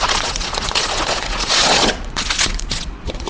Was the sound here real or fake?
fake